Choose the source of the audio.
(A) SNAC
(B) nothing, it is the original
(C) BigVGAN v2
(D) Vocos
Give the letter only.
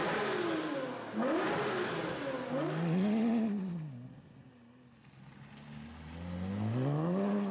B